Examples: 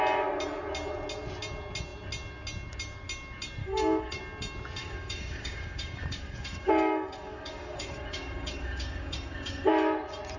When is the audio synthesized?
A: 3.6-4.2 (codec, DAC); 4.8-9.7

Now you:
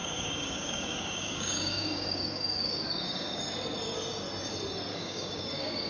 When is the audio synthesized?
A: 0.0-3.4 (codec, DAC); 4.9-5.9

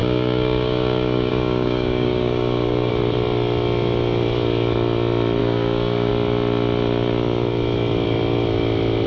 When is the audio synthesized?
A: 0.0-2.9 (codec, DAC); 5.4-6.1

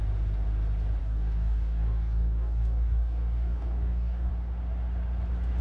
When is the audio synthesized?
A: 1.0-4.3 (codec, DAC)